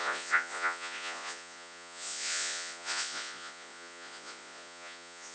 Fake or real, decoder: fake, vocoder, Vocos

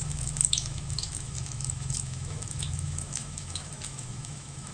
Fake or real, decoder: fake, autoencoder, DAC-VAE